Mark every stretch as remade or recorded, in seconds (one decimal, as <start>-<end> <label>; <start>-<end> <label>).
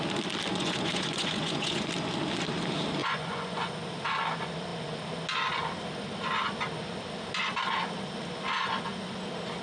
0.0-0.5 recorded; 0.5-1.9 remade; 1.9-3.0 recorded; 3.0-3.7 remade; 3.7-9.6 recorded